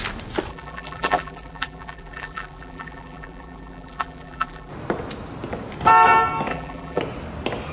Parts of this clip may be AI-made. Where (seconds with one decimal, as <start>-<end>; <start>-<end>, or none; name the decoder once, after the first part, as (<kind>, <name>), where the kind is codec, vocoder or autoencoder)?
0.5-4.7 (vocoder, BigVGAN v2); 6.5-7.0